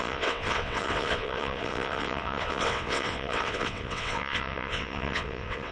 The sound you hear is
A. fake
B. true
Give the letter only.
A